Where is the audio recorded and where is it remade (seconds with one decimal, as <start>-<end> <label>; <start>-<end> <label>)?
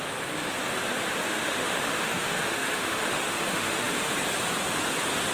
0.0-1.3 recorded; 1.3-4.1 remade; 4.1-5.3 recorded